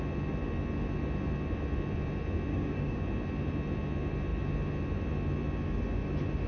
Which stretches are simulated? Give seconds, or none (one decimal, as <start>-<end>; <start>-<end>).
2.5-3.0